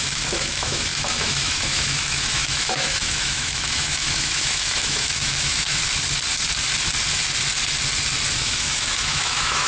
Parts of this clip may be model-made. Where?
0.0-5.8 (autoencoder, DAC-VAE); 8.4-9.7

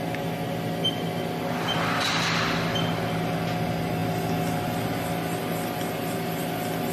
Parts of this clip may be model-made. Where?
none

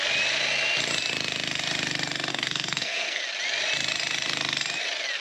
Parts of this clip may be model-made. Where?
2.3-3.2 (codec, SNAC)

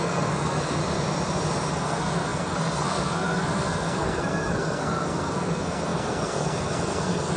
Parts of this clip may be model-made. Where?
0.0-0.8 (codec, SNAC); 1.7-7.4

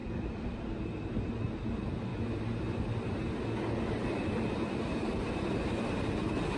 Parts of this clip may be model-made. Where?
0.0-0.6 (vocoder, BigVGAN v2)

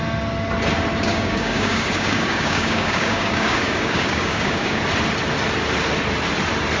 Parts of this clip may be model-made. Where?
1.1-4.8 (codec, DAC)